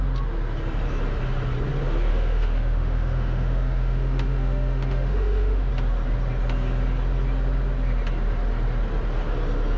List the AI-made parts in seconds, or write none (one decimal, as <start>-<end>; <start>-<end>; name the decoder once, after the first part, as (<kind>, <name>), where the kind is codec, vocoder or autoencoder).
2.1-5.7 (autoencoder, DAC-VAE)